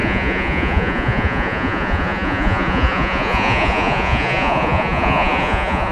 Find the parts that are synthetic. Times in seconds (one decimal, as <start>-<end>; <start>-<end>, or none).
0.0-5.9

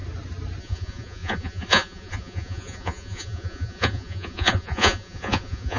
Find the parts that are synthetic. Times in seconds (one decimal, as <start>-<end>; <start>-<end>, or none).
0.6-5.8

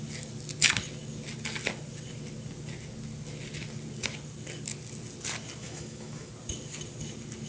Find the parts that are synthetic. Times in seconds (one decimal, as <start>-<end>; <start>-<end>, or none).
5.6-6.3

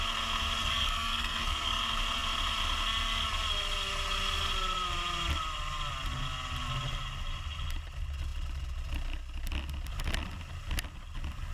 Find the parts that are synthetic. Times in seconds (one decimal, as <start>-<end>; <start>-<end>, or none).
0.6-1.8

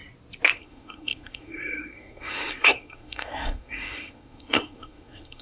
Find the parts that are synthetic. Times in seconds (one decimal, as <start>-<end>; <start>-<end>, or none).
0.6-5.4

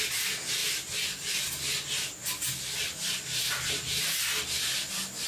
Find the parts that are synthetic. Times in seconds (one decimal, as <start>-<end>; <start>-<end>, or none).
none

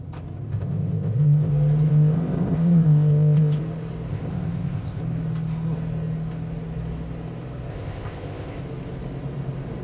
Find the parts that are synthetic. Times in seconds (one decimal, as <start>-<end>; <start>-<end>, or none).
0.5-1.5; 1.9-3.6; 4.1-5.0; 7.7-8.6

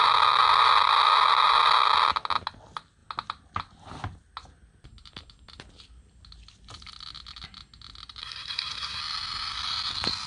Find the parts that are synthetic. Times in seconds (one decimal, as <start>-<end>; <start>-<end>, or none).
8.2-9.0